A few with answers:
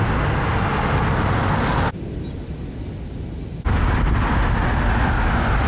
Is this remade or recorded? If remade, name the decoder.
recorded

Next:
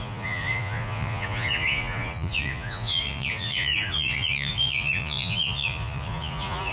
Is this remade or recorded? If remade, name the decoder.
remade, vocoder, Vocos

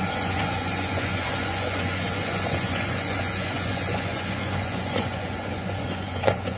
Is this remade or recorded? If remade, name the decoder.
remade, vocoder, Vocos